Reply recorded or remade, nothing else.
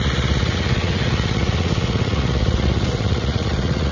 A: remade